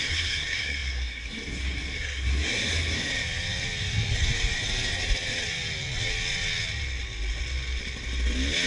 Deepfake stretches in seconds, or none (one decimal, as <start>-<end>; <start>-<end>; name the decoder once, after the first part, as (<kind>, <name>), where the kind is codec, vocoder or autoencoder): 0.0-3.1 (codec, SNAC)